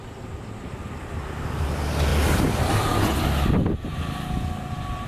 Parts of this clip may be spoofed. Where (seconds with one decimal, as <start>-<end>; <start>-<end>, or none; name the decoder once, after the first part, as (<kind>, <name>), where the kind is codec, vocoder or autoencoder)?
none